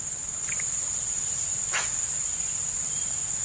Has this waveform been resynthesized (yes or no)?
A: no